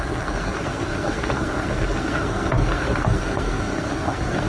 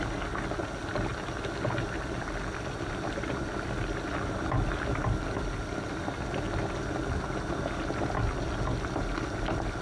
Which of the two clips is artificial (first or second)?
first